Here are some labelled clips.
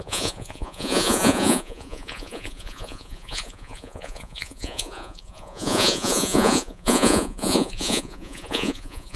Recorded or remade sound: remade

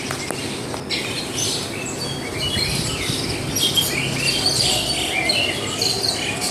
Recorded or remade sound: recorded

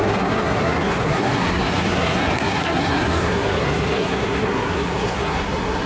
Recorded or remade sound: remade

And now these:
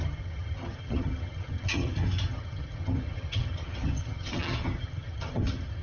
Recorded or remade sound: remade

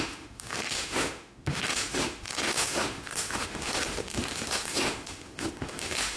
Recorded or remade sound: remade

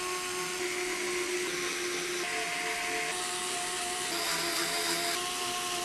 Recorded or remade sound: recorded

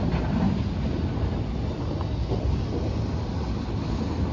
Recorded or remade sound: recorded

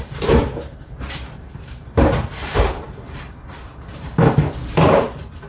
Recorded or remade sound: remade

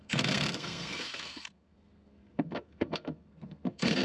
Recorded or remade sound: remade